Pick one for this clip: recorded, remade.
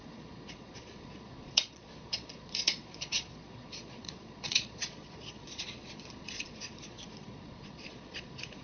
remade